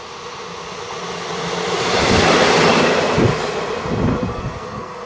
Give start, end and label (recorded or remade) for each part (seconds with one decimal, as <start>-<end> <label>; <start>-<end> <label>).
0.0-4.3 recorded; 4.3-5.1 remade

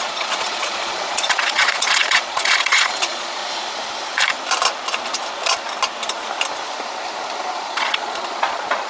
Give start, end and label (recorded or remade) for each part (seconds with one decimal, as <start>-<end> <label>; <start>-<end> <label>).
0.0-3.4 remade; 3.4-7.5 recorded; 7.5-8.9 remade

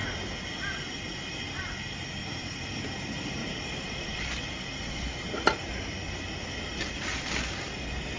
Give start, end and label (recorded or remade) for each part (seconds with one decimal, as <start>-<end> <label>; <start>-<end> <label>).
0.0-2.2 recorded; 2.2-2.7 remade; 2.7-3.4 recorded; 3.4-6.0 remade; 6.0-8.2 recorded